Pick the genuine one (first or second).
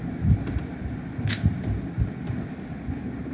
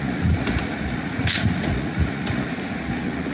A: first